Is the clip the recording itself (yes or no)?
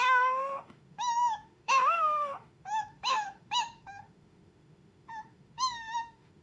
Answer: no